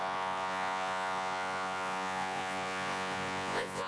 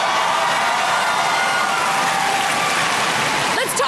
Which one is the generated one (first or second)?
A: first